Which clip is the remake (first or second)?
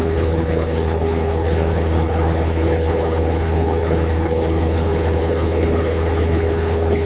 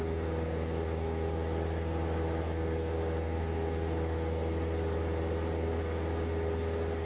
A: first